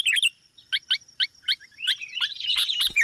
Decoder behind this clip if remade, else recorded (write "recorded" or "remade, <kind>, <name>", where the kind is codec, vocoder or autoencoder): remade, vocoder, BigVGAN v2